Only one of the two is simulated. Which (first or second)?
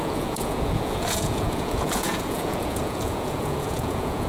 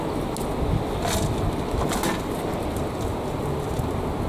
first